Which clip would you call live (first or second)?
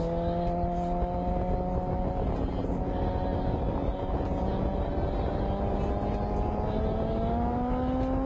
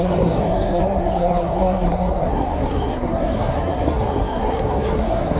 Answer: first